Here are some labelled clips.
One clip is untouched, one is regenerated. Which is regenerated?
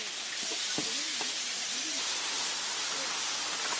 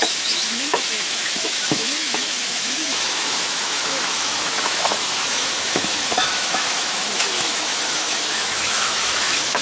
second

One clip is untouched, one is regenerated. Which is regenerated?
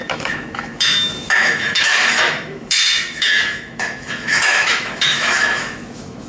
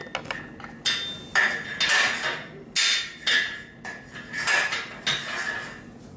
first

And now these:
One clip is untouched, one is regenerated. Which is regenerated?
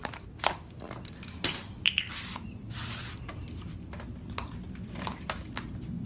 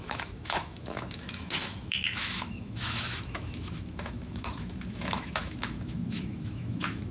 second